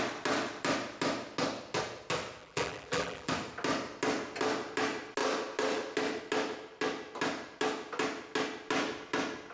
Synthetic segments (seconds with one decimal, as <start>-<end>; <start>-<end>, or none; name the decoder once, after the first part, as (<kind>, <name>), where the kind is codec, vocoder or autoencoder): 2.4-3.3 (vocoder, BigVGAN v2)